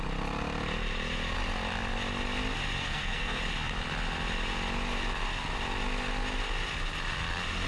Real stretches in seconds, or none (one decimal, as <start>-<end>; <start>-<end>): 0.0-2.8; 3.4-7.7